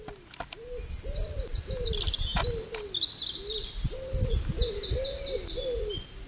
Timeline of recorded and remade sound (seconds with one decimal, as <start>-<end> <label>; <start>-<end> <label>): 0.0-6.3 recorded